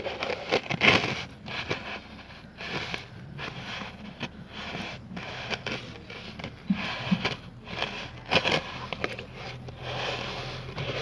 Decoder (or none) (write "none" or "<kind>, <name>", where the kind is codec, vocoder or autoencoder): none